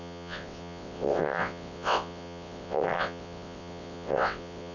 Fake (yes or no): yes